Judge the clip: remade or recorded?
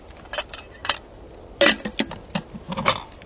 recorded